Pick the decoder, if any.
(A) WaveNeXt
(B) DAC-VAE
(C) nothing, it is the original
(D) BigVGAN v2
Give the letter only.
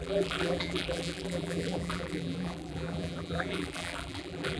D